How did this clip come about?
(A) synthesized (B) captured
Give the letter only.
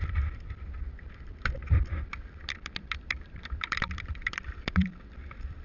A